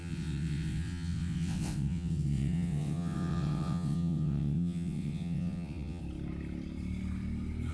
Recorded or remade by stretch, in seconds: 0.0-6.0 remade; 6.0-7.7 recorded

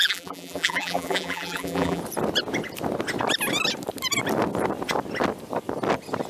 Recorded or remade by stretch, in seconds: 0.0-2.0 remade; 2.0-6.3 recorded

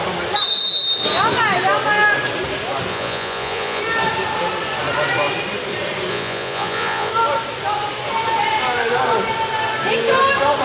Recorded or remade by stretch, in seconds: 0.0-2.9 recorded; 2.9-3.8 remade; 3.8-6.1 recorded; 6.1-7.1 remade; 7.1-10.6 recorded

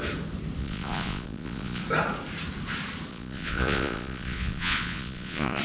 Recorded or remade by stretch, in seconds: 0.0-0.6 recorded; 0.6-1.8 remade; 1.8-3.1 recorded; 3.1-5.6 remade

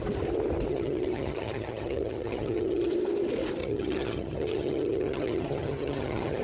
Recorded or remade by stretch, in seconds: 0.0-0.7 recorded; 0.7-2.9 remade; 2.9-3.6 recorded; 3.6-6.4 remade